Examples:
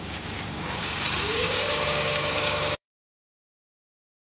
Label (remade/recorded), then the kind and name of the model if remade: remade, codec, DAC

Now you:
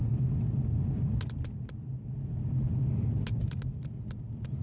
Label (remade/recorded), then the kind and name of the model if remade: recorded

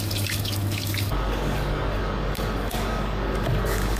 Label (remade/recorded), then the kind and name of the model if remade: remade, codec, DAC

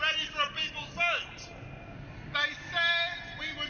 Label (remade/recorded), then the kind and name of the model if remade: recorded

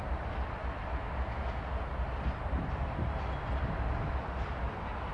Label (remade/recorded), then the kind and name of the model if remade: recorded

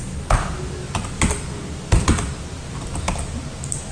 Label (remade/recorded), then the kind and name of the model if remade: recorded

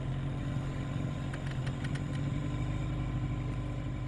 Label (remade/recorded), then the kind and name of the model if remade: recorded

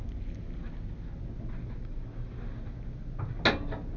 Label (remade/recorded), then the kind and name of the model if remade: recorded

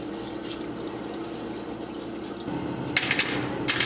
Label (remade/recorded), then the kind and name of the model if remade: recorded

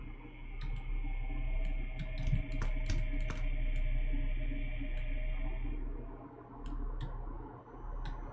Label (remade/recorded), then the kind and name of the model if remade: recorded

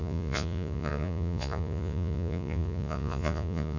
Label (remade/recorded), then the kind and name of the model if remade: remade, vocoder, Vocos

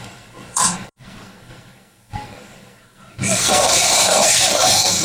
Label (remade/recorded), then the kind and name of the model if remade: remade, codec, SNAC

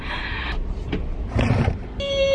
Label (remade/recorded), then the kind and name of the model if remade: recorded